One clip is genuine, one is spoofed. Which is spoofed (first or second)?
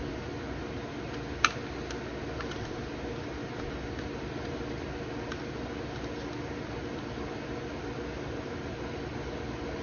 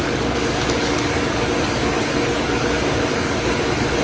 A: second